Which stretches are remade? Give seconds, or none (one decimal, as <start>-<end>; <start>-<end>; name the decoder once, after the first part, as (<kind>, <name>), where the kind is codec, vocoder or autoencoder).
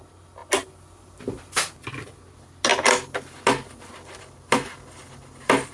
none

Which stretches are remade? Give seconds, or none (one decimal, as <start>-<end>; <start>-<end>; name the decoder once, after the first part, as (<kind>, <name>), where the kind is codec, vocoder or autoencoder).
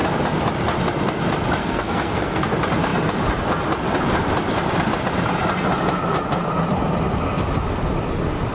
1.6-2.5 (codec, SNAC)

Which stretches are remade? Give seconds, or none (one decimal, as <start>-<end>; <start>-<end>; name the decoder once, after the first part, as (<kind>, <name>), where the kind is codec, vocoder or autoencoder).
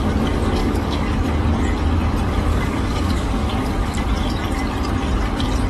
0.6-1.3 (codec, DAC); 2.5-3.5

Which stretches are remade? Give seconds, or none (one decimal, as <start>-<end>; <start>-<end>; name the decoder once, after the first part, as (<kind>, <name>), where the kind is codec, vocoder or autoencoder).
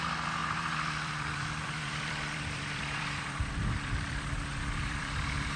0.0-5.6 (vocoder, BigVGAN v2)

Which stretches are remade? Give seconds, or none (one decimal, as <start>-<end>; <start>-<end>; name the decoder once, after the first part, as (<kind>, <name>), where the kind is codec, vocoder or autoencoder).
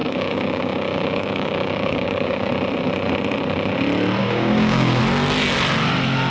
0.0-2.5 (codec, DAC); 4.2-5.0